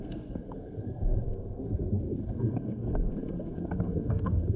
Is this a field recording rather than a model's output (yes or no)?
no